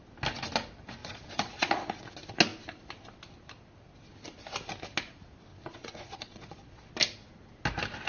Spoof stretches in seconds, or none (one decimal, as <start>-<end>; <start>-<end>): 1.0-2.0; 5.5-6.9